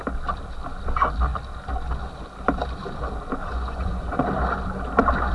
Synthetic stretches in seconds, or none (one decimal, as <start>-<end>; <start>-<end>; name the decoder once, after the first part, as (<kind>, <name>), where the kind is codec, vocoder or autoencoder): 3.4-4.2 (vocoder, Vocos)